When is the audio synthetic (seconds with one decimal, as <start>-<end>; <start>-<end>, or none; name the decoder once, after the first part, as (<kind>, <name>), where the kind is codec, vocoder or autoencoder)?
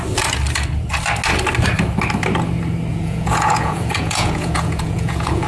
2.9-5.5 (vocoder, Vocos)